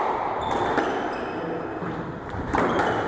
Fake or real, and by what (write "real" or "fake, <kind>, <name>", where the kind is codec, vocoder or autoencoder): real